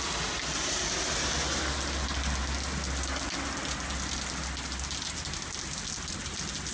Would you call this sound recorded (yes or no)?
yes